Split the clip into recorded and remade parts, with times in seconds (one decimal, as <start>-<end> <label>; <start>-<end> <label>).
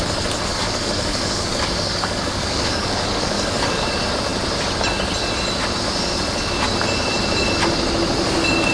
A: 0.0-0.5 recorded; 0.5-3.9 remade; 3.9-8.7 recorded